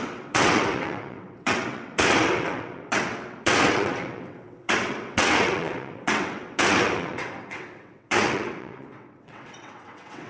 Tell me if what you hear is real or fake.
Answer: fake